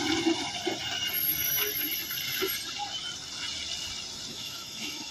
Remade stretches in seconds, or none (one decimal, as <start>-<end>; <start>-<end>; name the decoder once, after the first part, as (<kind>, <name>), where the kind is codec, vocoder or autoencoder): 4.3-5.1 (autoencoder, DAC-VAE)